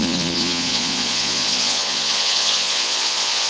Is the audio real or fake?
fake